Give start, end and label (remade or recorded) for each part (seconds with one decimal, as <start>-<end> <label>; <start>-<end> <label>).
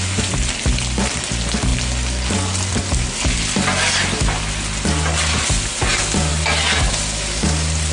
0.0-7.9 recorded